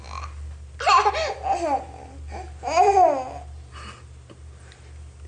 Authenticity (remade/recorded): recorded